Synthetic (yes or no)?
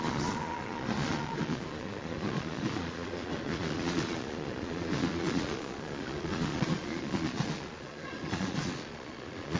yes